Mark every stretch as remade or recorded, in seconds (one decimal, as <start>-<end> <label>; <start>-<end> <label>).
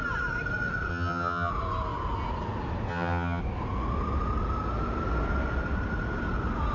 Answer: 0.0-0.9 recorded; 0.9-1.5 remade; 1.5-2.9 recorded; 2.9-3.4 remade; 3.4-6.7 recorded